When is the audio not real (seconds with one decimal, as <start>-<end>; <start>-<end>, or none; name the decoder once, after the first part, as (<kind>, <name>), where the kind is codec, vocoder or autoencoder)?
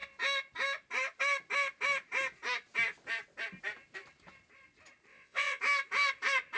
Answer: 5.1-5.6 (vocoder, WaveNeXt)